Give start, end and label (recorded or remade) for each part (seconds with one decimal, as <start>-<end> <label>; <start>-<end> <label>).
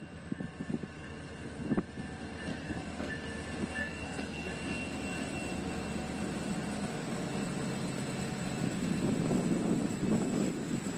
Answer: 0.0-2.5 recorded; 2.5-3.1 remade; 3.1-3.8 recorded; 3.8-4.5 remade; 4.5-11.0 recorded